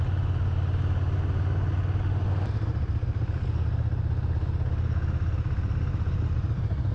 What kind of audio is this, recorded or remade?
recorded